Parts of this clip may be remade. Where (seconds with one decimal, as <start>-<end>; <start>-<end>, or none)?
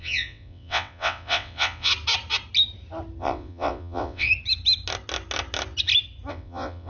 0.0-1.9; 3.2-4.3; 6.3-6.9